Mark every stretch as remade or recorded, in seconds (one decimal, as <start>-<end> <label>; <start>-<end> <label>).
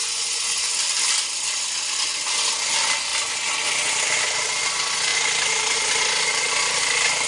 0.0-0.7 remade; 0.7-7.3 recorded